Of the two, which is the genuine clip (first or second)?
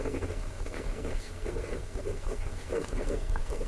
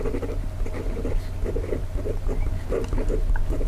second